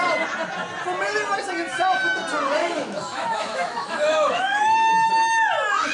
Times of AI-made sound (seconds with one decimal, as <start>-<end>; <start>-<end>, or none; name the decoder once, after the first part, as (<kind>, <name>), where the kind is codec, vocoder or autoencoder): 2.6-5.1 (autoencoder, DAC-VAE)